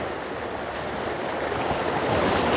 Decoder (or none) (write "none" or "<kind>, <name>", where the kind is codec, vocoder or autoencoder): none